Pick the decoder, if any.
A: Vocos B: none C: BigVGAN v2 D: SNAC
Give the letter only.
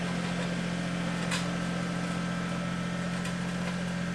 B